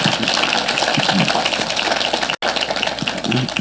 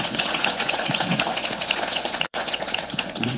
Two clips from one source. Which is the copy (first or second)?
second